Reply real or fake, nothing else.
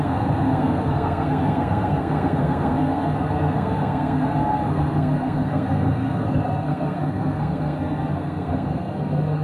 fake